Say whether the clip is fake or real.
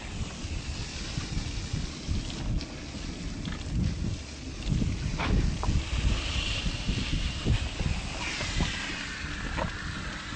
real